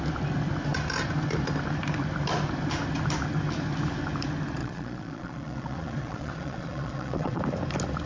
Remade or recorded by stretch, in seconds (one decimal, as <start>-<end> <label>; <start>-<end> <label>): 0.0-4.6 recorded; 4.6-7.4 remade; 7.4-8.1 recorded

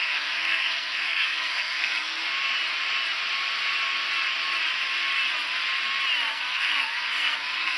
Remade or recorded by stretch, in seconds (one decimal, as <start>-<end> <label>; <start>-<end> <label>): 0.0-2.2 remade; 2.2-6.3 recorded; 6.3-7.8 remade